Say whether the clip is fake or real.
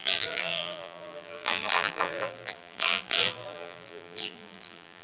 fake